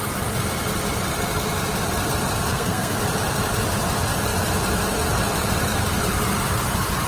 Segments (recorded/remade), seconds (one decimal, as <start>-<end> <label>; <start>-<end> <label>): 0.0-2.5 recorded; 2.5-3.0 remade; 3.0-7.1 recorded